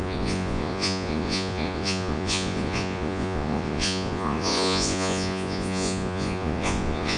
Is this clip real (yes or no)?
no